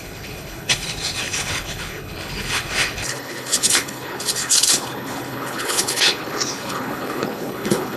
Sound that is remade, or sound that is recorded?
remade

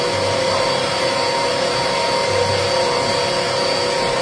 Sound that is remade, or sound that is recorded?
recorded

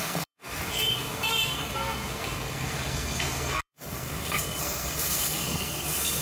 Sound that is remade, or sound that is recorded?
remade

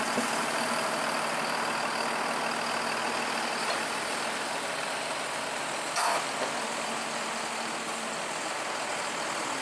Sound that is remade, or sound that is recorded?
recorded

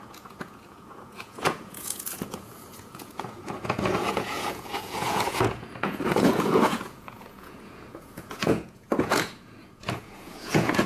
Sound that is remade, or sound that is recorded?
remade